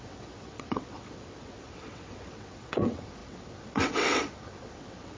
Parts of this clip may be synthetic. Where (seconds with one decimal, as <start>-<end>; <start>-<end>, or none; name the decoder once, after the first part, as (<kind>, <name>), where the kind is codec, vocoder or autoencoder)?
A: 0.0-5.2 (vocoder, WaveNeXt)